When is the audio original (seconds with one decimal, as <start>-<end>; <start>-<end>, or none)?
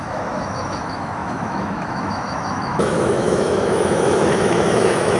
none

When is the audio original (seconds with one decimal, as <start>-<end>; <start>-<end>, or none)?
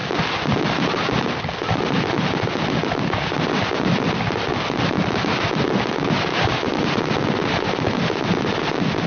0.0-9.1